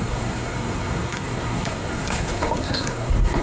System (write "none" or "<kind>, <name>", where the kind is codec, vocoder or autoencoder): codec, SNAC